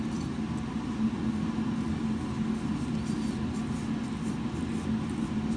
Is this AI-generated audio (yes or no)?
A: no